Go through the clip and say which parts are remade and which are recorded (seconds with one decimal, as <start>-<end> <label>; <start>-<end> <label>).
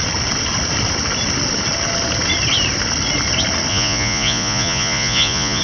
0.0-3.7 recorded; 3.7-5.6 remade